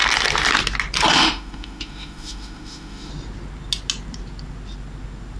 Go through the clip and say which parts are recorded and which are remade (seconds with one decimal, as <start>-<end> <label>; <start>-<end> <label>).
0.0-1.1 recorded; 1.1-3.1 remade; 3.1-5.4 recorded